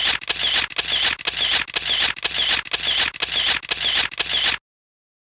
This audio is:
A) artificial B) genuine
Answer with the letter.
B